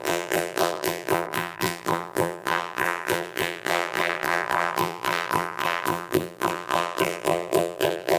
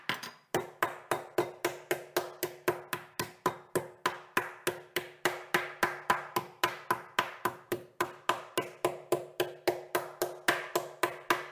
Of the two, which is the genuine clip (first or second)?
second